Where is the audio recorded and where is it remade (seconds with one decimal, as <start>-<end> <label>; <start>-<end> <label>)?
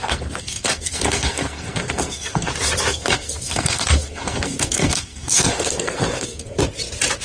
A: 0.0-2.5 remade; 2.5-2.9 recorded; 2.9-6.6 remade; 6.6-7.2 recorded